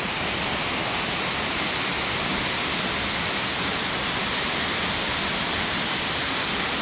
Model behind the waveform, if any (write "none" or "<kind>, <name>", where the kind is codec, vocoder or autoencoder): none